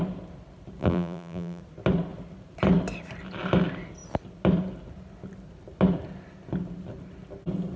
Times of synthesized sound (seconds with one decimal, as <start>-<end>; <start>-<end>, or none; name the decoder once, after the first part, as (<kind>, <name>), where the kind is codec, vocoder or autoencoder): 0.8-1.6 (vocoder, BigVGAN v2)